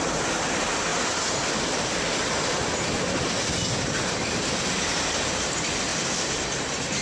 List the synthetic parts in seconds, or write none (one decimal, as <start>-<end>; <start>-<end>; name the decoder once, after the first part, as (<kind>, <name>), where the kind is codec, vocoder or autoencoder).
none